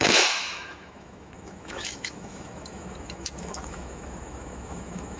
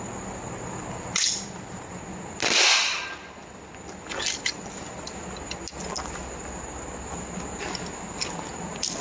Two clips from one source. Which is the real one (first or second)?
second